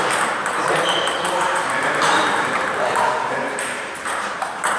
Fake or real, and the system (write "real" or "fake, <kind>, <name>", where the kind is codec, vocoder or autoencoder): fake, vocoder, BigVGAN v2